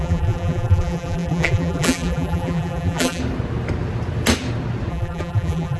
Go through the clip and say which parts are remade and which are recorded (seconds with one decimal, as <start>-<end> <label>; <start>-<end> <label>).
0.0-3.2 remade; 3.2-4.9 recorded; 4.9-5.8 remade